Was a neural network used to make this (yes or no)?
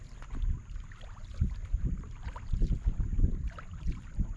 no